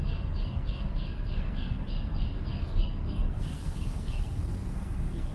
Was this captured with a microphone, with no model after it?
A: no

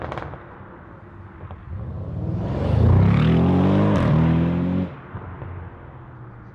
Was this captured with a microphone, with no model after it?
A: yes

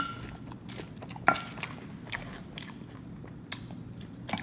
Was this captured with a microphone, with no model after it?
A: yes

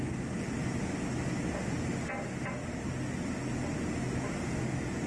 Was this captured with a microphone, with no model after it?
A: yes